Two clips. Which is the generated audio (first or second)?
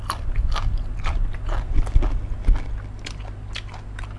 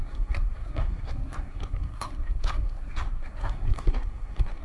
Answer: second